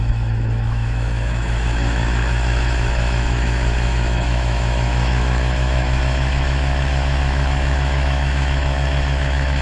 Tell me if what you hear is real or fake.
fake